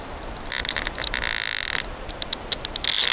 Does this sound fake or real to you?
real